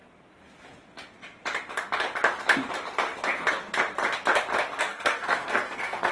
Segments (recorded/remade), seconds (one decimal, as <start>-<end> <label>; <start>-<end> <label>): 0.0-4.9 recorded; 4.9-6.1 remade